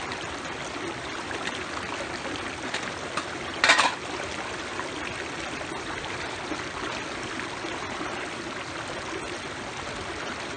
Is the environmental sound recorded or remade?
recorded